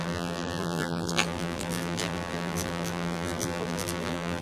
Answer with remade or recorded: remade